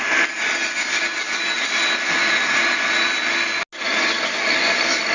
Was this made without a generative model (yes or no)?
yes